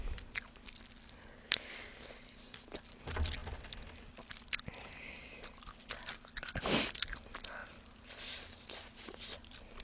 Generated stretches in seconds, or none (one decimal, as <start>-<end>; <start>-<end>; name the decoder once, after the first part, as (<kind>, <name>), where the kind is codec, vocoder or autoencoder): 7.6-9.8 (vocoder, BigVGAN v2)